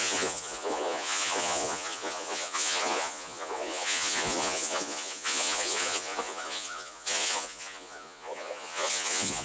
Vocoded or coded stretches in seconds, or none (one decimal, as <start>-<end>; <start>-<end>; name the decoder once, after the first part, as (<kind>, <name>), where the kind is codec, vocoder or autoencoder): 0.0-9.4 (vocoder, Vocos)